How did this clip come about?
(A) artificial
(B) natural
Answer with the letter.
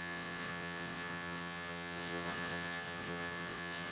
A